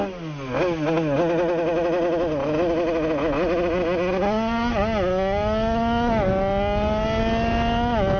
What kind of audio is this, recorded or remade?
recorded